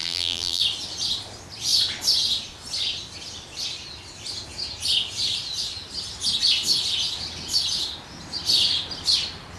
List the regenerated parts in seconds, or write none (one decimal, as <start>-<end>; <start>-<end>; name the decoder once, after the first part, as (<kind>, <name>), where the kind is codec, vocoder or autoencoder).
0.0-0.6 (vocoder, BigVGAN v2)